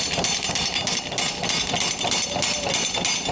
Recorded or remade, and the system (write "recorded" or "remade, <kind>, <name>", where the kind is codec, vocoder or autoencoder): recorded